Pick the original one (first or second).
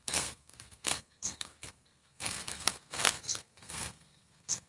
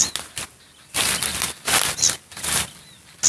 second